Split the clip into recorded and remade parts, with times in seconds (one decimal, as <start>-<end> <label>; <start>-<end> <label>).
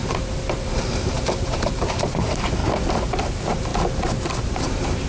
0.0-2.6 remade; 2.6-3.3 recorded; 3.3-3.7 remade; 3.7-4.4 recorded; 4.4-5.1 remade